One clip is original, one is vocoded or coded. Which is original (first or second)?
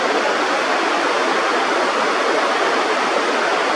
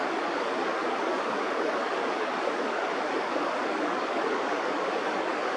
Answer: first